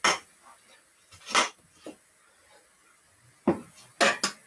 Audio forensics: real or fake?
real